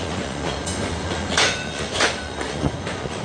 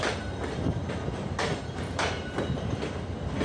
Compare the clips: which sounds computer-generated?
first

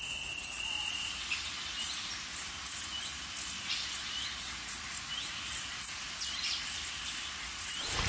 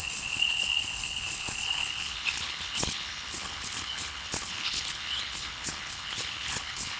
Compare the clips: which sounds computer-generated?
second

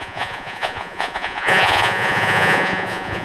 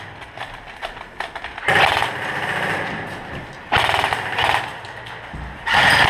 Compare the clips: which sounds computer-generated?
first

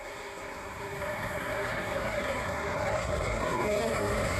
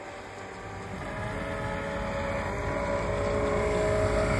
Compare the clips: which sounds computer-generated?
first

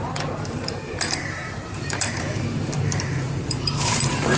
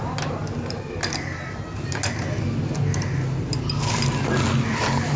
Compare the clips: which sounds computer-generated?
first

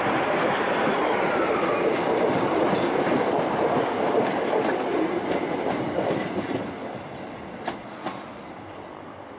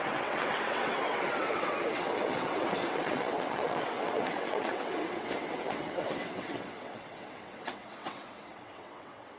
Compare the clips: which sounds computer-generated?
second